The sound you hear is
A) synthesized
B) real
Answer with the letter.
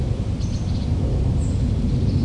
B